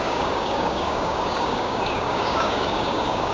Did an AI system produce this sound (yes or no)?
yes